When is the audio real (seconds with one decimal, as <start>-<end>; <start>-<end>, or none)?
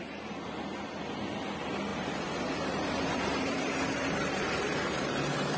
0.0-1.9